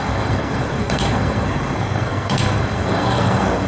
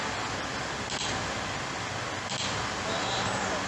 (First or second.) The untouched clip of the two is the second